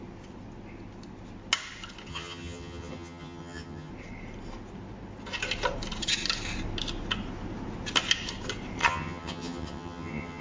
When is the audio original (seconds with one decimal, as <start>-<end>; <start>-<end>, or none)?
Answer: 0.0-2.1; 3.9-8.8